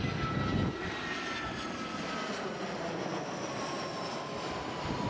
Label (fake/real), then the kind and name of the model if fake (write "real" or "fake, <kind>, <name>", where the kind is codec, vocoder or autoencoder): real